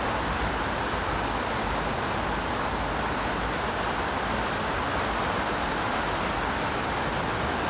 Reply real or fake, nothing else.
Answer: real